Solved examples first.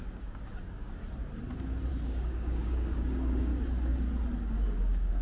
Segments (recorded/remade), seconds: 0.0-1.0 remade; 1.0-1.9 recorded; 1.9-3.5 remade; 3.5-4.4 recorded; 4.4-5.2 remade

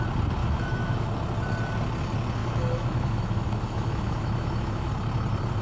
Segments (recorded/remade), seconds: 0.0-0.4 recorded; 0.4-1.1 remade; 1.1-2.4 recorded; 2.4-4.9 remade; 4.9-5.6 recorded

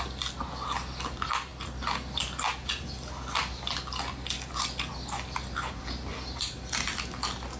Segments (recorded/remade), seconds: 0.0-7.6 recorded

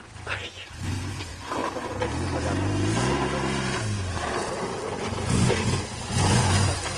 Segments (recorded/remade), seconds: 0.0-1.6 remade; 1.6-4.9 recorded; 4.9-7.0 remade

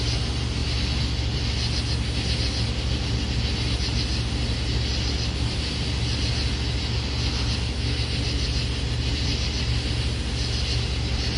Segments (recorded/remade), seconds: 0.0-11.4 recorded

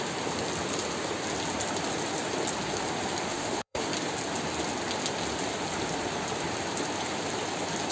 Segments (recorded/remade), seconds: 0.0-3.3 recorded; 3.3-3.9 remade; 3.9-7.9 recorded